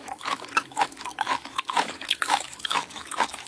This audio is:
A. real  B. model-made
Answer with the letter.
B